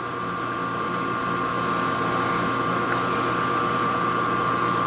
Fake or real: real